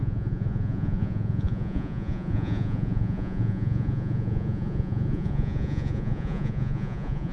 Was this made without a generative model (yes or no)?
no